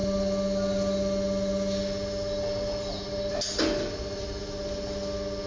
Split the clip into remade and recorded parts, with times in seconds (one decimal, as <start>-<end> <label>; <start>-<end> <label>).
0.0-5.5 recorded